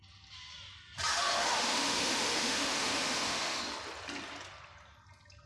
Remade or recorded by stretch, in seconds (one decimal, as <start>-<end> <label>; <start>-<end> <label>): 0.0-1.1 recorded; 1.1-3.6 remade; 3.6-5.5 recorded